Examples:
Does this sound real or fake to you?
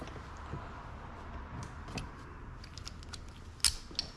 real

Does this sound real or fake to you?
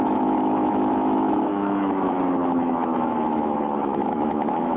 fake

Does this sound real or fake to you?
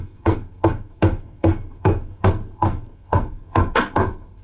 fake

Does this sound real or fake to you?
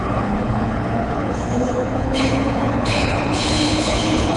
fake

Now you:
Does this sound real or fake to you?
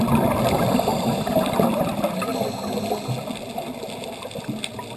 real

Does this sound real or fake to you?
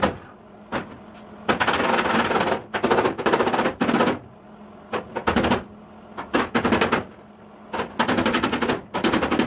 real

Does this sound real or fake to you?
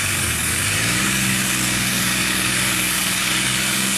fake